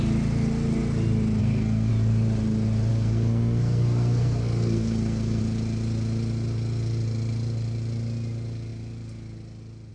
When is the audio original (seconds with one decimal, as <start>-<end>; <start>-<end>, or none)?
0.0-1.4; 1.9-2.9; 5.4-9.9